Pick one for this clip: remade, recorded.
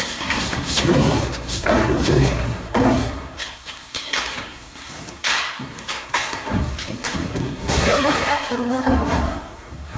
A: remade